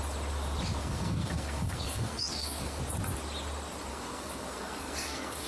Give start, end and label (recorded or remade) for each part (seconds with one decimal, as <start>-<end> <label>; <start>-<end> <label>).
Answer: 0.0-0.8 recorded; 0.8-2.8 remade; 2.8-3.9 recorded; 3.9-5.5 remade